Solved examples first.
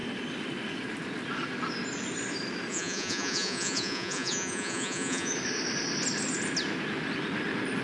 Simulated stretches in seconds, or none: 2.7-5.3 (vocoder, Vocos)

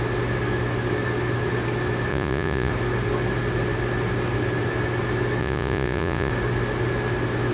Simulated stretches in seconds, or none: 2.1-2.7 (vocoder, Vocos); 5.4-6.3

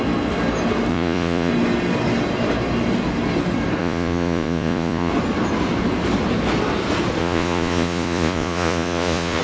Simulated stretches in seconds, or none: 0.9-1.5 (vocoder, Vocos); 3.8-5.1; 7.2-9.4

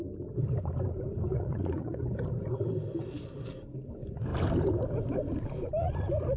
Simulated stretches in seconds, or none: 1.3-2.0 (vocoder, Vocos)

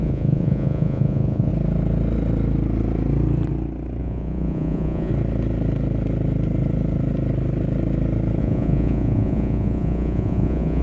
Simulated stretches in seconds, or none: 0.0-1.5 (vocoder, Vocos); 4.0-5.1; 8.4-10.8